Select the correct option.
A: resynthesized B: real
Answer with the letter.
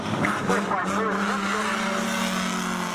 B